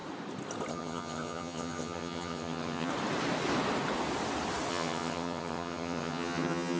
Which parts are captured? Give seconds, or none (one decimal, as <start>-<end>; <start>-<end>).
0.0-0.7; 2.9-4.7